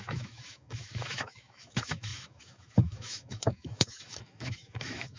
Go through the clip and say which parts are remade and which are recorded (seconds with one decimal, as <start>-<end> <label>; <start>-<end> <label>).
0.0-5.2 remade